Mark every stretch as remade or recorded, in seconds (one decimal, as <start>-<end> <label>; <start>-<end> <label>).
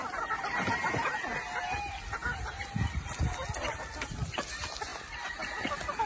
0.0-6.1 recorded